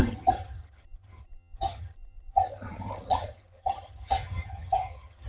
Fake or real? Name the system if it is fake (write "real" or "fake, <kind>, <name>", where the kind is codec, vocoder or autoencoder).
fake, vocoder, HiFi-GAN